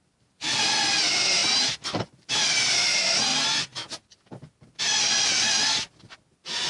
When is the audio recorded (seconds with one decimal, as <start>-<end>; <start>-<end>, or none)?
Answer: 0.0-1.4; 2.3-6.7